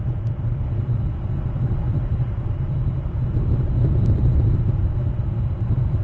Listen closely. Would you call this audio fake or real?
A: fake